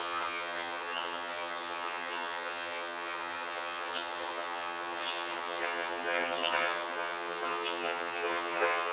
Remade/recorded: remade